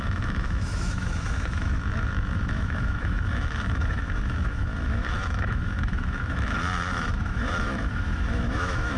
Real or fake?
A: fake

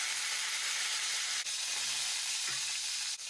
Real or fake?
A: real